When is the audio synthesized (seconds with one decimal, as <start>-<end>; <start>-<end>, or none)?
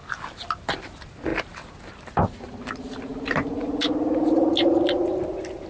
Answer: none